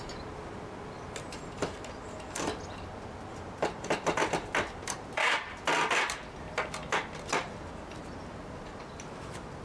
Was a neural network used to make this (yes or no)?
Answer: no